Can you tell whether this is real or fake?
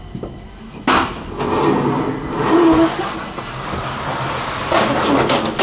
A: real